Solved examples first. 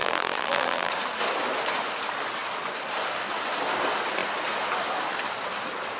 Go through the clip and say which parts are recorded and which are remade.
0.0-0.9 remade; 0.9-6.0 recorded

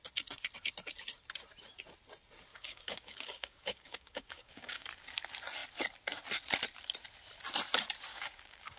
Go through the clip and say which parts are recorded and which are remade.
0.0-2.5 recorded; 2.5-4.9 remade; 4.9-8.1 recorded; 8.1-8.8 remade

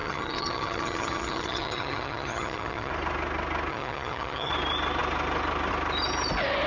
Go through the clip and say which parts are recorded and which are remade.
0.0-2.9 remade; 2.9-3.7 recorded; 3.7-4.5 remade; 4.5-6.7 recorded

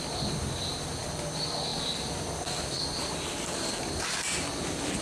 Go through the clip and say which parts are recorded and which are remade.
0.0-5.0 recorded

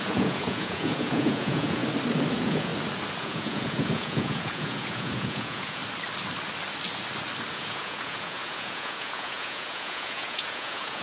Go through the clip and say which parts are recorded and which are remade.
0.0-1.8 remade; 1.8-2.3 recorded; 2.3-2.7 remade; 2.7-3.2 recorded; 3.2-5.8 remade; 5.8-7.5 recorded; 7.5-11.0 remade

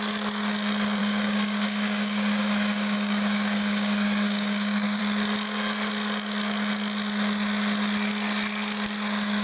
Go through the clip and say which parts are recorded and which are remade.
0.0-1.0 recorded; 1.0-5.0 remade; 5.0-9.4 recorded